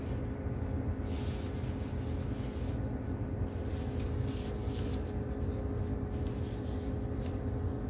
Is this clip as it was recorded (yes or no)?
yes